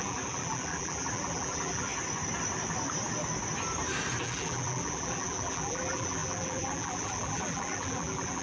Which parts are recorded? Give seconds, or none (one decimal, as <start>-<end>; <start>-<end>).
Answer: 1.9-4.2